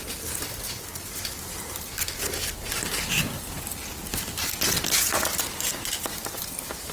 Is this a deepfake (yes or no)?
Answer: no